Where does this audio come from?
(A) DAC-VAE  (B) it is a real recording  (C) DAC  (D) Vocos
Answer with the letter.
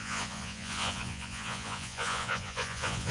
D